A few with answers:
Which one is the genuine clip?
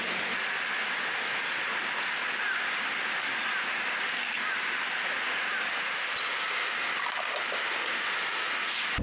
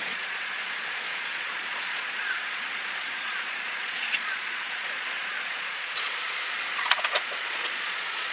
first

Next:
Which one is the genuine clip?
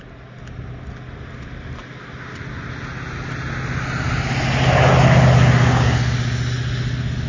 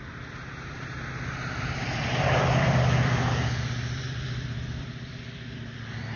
first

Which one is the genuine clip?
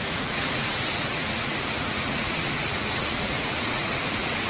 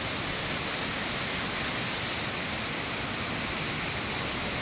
second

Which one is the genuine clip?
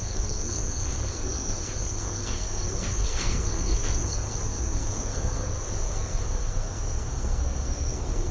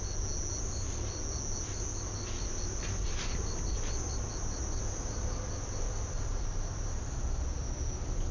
second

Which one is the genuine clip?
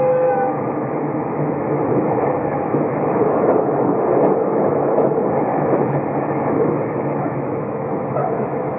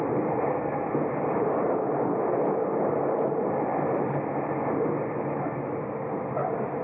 second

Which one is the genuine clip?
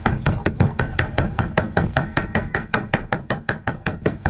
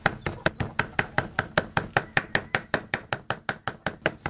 second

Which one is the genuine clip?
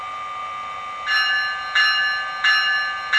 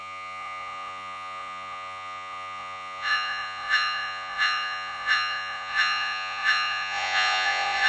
first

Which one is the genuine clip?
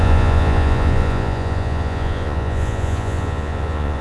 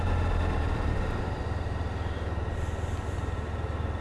second